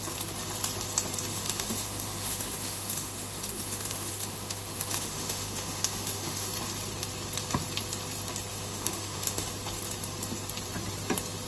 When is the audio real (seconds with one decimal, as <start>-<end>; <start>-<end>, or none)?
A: 0.0-1.3; 6.5-8.5; 9.5-11.5